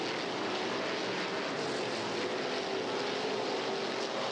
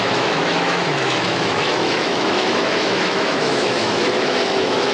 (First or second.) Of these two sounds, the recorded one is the first